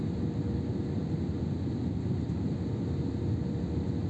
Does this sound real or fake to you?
real